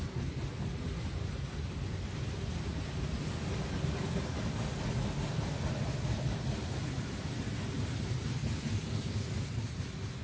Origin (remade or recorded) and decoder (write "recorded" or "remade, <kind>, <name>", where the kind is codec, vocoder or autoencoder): recorded